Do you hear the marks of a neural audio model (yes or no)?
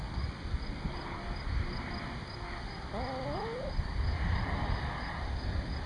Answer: no